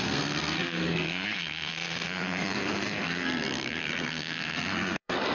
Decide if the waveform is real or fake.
fake